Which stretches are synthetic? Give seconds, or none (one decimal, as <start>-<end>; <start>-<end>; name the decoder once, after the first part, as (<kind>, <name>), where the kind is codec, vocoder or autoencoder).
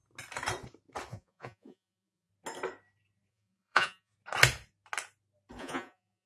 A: 1.1-2.3 (vocoder, Vocos); 3.3-4.1; 5.6-6.3